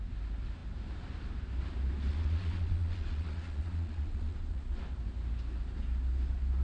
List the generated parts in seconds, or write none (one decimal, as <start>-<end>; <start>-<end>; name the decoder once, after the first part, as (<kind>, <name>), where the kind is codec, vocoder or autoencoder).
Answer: 2.1-4.8 (vocoder, Vocos)